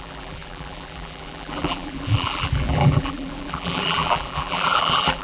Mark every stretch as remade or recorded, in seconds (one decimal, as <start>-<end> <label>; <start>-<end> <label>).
0.0-5.2 remade